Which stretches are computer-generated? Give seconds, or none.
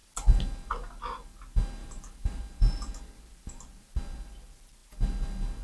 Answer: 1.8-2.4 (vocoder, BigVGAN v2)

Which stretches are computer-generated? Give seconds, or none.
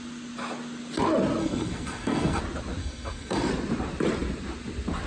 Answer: 1.4-2.4 (codec, SNAC); 2.8-3.5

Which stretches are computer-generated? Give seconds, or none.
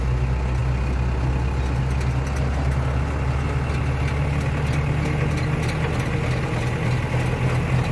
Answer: none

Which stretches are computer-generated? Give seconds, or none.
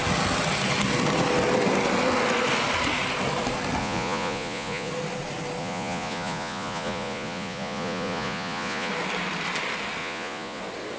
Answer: 3.8-4.9 (vocoder, Vocos); 5.6-8.9; 10.0-10.6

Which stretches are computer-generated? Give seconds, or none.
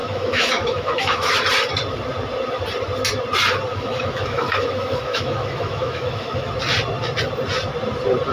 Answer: 0.0-1.3 (autoencoder, DAC-VAE); 3.7-6.5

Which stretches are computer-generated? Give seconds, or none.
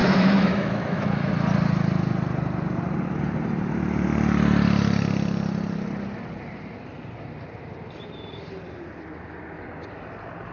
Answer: 0.0-1.3 (autoencoder, DAC-VAE)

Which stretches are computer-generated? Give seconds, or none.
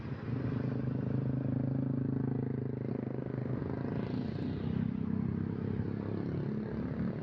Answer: 2.9-3.6 (autoencoder, DAC-VAE)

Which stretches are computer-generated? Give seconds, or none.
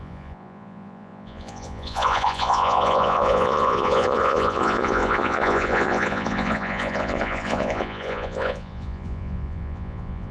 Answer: 0.0-10.3 (vocoder, Vocos)